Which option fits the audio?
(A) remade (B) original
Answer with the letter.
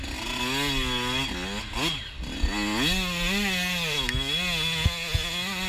B